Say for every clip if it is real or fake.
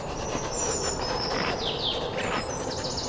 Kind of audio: real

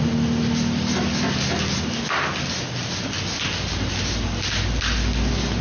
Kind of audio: real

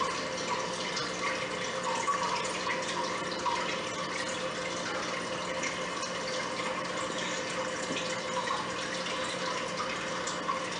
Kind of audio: real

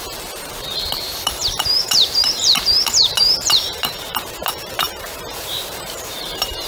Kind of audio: fake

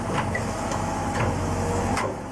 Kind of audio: fake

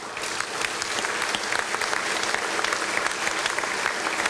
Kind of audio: real